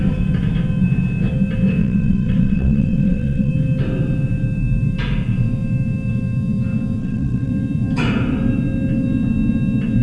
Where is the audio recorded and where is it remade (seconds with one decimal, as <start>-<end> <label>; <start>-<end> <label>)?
0.0-1.8 recorded; 1.8-3.5 remade; 3.5-7.0 recorded; 7.0-7.5 remade; 7.5-10.0 recorded